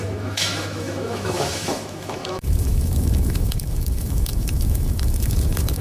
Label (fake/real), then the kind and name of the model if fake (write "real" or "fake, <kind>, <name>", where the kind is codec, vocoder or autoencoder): fake, autoencoder, DAC-VAE